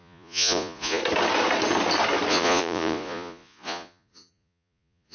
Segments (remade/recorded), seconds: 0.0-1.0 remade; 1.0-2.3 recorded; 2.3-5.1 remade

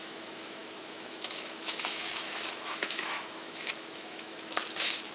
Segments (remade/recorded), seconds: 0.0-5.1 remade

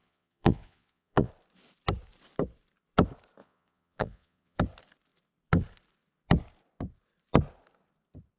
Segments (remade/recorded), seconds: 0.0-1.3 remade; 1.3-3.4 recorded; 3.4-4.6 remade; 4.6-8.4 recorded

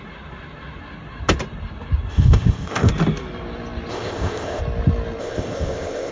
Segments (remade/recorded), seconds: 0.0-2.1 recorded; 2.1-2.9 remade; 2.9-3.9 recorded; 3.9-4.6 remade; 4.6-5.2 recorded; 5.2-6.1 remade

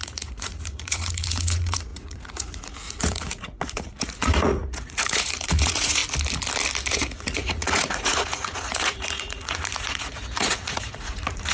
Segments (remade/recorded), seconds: 0.0-6.0 remade; 6.0-6.9 recorded; 6.9-11.5 remade

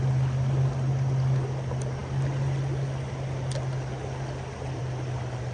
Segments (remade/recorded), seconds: 0.0-5.5 recorded